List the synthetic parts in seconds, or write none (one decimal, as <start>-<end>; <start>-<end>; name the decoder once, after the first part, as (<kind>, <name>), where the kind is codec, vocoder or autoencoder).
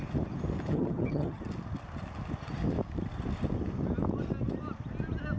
0.7-1.4 (vocoder, HiFi-GAN)